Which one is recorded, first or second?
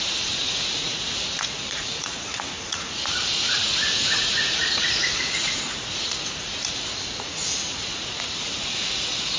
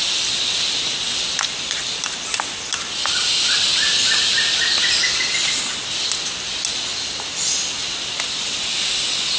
second